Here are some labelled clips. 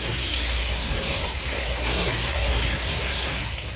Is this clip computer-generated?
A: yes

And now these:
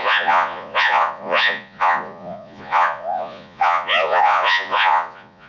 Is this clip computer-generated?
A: yes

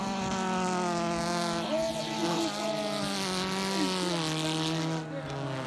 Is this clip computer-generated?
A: no